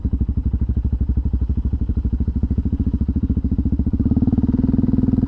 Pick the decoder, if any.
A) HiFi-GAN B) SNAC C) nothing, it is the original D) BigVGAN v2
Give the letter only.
D